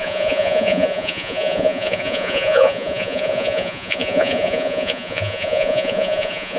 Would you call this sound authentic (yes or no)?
no